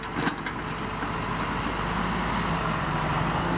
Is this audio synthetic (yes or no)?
no